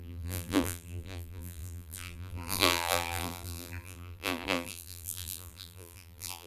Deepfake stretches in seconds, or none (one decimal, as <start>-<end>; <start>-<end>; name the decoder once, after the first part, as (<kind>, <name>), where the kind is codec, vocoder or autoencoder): 0.0-6.5 (vocoder, BigVGAN v2)